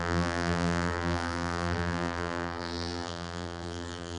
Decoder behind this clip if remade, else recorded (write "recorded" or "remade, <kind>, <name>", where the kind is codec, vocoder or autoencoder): remade, vocoder, BigVGAN v2